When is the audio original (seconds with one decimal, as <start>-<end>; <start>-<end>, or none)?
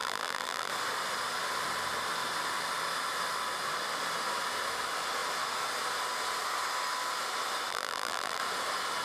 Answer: 0.7-7.7; 8.4-9.0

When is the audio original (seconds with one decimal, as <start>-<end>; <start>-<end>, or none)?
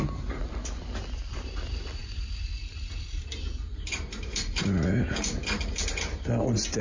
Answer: 0.0-6.8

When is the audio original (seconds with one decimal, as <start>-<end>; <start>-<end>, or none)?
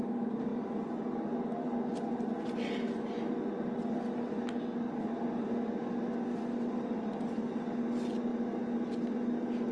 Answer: 0.0-9.7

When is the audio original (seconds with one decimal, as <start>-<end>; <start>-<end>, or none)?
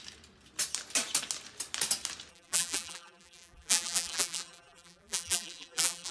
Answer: 0.0-2.3